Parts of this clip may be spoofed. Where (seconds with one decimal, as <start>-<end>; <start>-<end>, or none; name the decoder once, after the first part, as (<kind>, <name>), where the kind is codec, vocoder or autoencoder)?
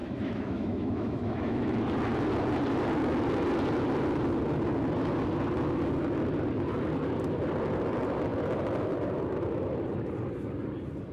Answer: 0.0-1.8 (autoencoder, DAC-VAE)